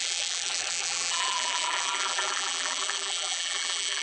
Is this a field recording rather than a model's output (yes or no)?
no